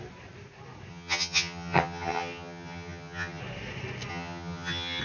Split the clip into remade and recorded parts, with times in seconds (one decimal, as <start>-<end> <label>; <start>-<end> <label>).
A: 0.0-0.9 recorded; 0.9-3.4 remade; 3.4-4.1 recorded; 4.1-5.0 remade